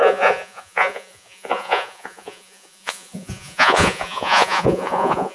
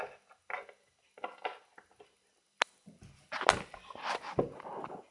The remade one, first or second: first